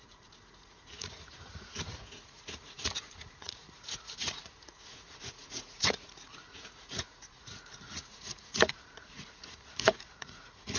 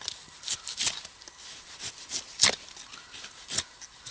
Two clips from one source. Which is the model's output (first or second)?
first